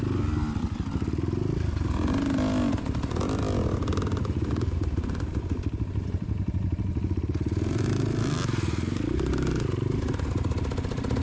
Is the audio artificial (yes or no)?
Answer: no